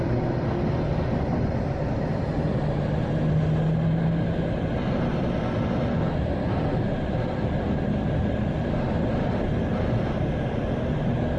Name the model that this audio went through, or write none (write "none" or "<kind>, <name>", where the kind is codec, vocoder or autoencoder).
none